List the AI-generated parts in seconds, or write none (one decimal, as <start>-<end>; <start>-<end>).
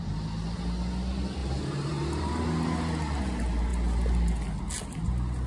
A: 1.4-2.3